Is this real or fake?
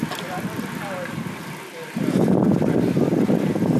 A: real